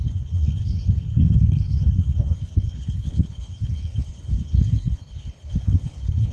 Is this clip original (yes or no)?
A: no